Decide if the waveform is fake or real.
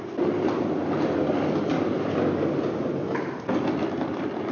real